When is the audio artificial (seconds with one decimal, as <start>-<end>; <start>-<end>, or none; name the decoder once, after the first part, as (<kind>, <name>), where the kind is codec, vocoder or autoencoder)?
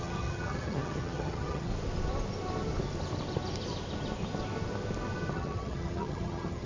0.0-1.7 (vocoder, HiFi-GAN); 5.3-6.7